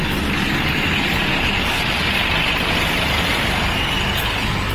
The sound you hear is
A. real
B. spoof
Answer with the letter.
A